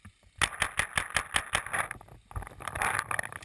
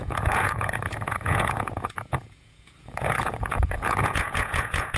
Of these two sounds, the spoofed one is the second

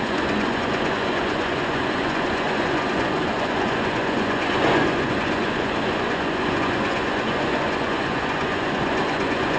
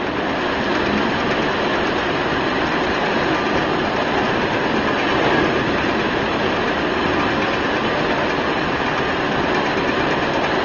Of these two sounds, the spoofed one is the first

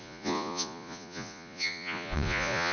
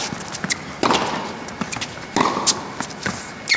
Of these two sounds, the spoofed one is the first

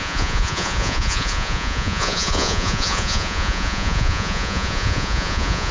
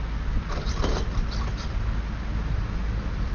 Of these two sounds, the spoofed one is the first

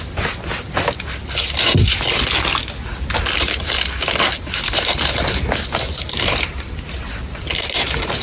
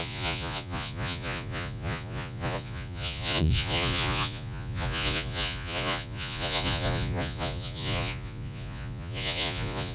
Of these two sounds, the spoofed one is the second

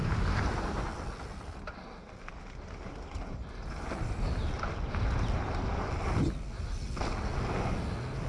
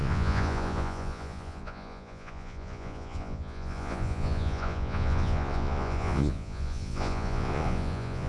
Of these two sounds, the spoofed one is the second